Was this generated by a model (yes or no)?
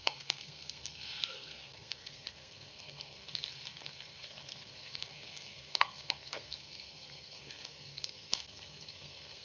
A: yes